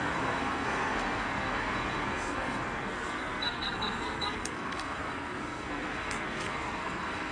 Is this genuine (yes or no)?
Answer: no